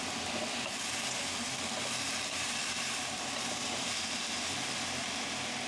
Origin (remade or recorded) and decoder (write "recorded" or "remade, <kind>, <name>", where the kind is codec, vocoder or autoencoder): recorded